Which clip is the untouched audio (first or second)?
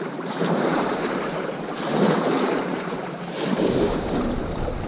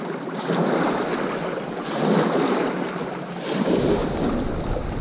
second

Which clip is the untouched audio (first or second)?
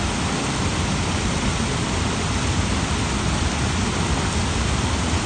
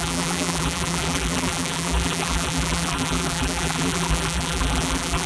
first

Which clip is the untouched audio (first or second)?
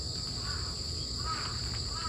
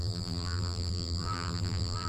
first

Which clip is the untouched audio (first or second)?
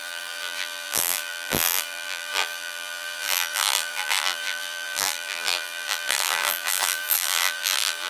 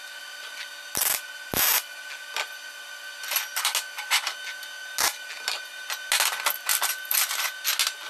second